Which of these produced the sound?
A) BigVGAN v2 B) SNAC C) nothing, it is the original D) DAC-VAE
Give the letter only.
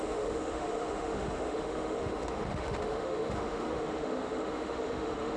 D